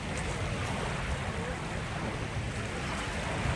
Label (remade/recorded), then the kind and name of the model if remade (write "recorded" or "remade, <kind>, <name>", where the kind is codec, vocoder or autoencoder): recorded